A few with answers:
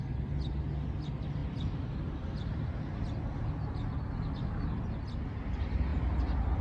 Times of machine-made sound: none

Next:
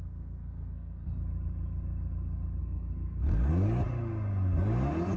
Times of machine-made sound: 0.0-1.2 (codec, SNAC); 2.6-3.5

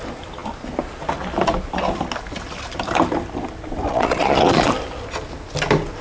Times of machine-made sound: 3.9-4.7 (vocoder, Vocos)

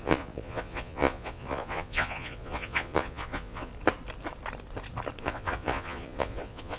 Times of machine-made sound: 0.0-3.7 (vocoder, Vocos); 5.2-6.8

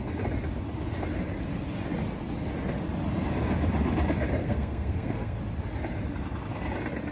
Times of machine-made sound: 4.4-5.4 (codec, SNAC)

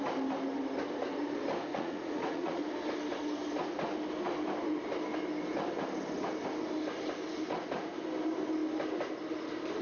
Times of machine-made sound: 1.7-2.6 (vocoder, Vocos)

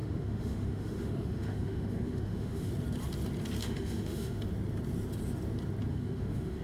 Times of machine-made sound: 0.0-2.7 (autoencoder, DAC-VAE); 3.6-4.5; 5.9-6.6